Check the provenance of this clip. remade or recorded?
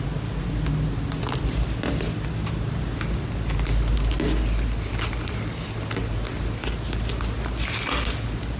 recorded